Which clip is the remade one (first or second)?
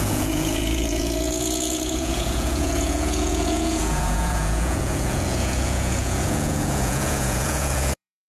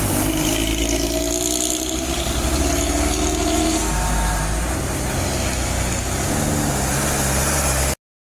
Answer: first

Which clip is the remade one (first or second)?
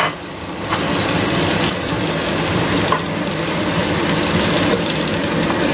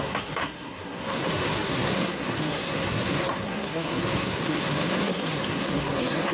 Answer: second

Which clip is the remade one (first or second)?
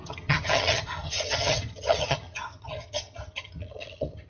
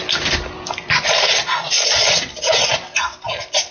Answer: first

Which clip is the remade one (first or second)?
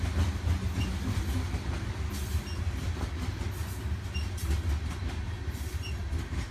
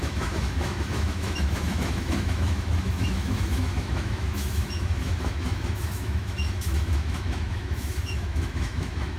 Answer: second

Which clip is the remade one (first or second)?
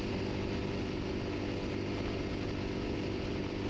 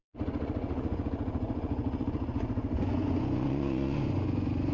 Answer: second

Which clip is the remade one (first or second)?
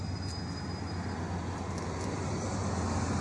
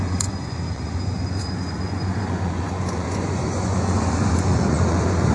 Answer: second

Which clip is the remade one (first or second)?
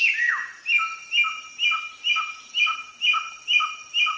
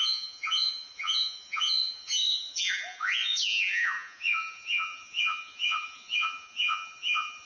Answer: second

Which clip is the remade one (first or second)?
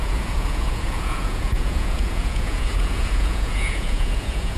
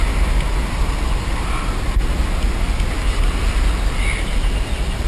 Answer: first